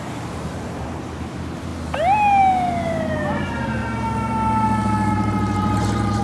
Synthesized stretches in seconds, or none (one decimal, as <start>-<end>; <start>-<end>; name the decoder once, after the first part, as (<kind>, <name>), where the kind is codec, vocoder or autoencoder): 0.0-1.7 (vocoder, BigVGAN v2); 3.4-3.8; 5.1-6.2

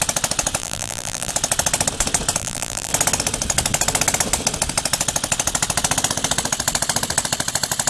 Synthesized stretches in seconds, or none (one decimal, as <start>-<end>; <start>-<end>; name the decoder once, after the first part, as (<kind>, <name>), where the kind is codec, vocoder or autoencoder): 0.6-1.3 (vocoder, BigVGAN v2); 2.4-2.9

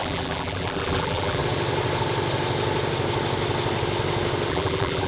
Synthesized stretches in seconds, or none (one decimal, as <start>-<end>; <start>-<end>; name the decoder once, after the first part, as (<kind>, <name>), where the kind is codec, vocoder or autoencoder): 0.0-1.4 (vocoder, BigVGAN v2); 4.5-5.1

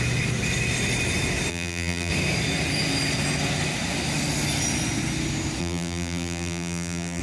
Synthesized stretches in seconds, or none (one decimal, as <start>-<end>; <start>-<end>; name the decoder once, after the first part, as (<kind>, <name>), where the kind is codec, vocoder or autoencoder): 1.5-2.1 (vocoder, BigVGAN v2); 5.6-7.2

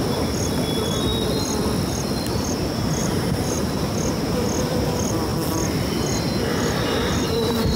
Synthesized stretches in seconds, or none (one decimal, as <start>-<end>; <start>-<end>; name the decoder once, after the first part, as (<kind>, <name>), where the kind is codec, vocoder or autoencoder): 3.0-3.8 (vocoder, BigVGAN v2)

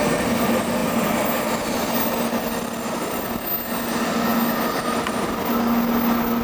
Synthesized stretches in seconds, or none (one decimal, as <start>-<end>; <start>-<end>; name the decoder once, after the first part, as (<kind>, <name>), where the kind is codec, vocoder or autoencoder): none

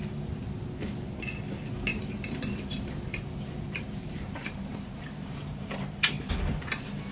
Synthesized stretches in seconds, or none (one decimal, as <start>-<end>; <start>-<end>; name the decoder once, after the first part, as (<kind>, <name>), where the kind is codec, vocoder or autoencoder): 1.9-6.1 (vocoder, BigVGAN v2)